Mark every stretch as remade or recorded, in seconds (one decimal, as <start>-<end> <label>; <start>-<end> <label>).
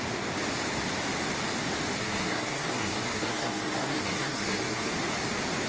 0.0-2.0 recorded; 2.0-4.9 remade; 4.9-5.7 recorded